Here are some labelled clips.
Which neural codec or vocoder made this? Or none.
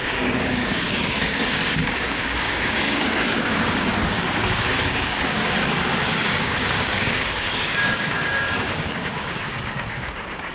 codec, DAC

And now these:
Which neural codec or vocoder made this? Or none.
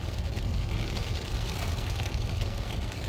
codec, SNAC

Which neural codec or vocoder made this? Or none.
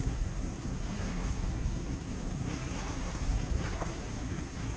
codec, SNAC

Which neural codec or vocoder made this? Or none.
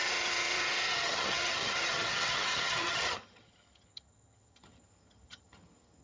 vocoder, HiFi-GAN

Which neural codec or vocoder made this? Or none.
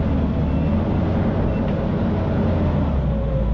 none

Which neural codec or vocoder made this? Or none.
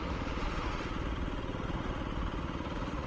vocoder, Vocos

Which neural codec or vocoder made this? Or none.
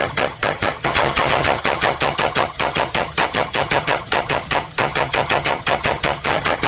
vocoder, HiFi-GAN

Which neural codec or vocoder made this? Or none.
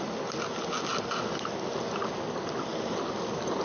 none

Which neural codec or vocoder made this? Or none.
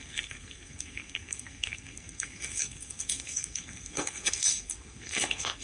codec, SNAC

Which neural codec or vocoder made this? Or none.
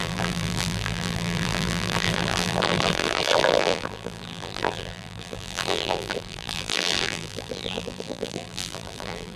vocoder, BigVGAN v2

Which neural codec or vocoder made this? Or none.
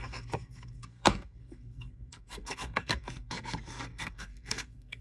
codec, SNAC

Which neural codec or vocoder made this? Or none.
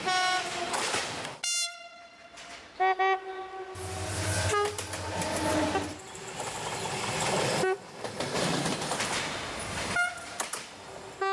none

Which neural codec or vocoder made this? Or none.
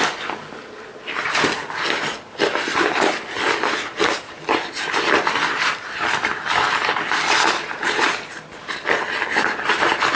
none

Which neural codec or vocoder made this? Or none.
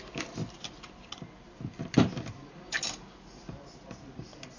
none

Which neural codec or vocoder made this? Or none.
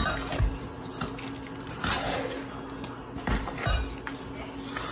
none